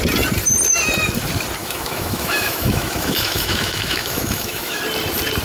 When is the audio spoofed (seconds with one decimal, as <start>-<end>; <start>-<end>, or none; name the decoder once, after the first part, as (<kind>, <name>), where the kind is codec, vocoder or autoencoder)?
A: 1.6-4.8 (autoencoder, DAC-VAE)